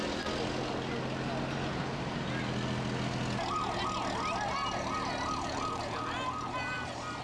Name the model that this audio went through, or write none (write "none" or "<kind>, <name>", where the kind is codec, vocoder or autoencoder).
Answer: none